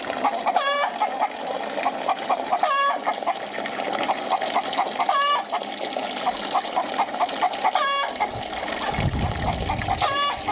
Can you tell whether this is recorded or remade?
recorded